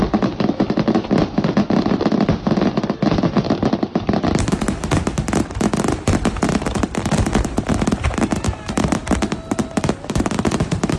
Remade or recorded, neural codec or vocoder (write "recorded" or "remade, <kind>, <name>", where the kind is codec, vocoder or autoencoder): remade, vocoder, BigVGAN v2